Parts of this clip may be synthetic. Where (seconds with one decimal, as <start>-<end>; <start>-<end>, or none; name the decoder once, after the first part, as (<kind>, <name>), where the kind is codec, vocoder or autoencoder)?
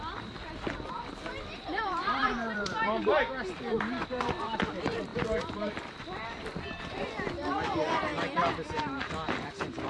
0.0-8.1 (vocoder, BigVGAN v2); 9.1-9.9